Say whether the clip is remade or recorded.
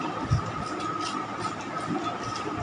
recorded